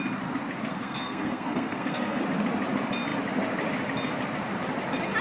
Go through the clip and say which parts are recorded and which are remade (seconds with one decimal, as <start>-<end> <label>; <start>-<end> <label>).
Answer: 0.0-0.7 recorded; 0.7-2.2 remade; 2.2-5.2 recorded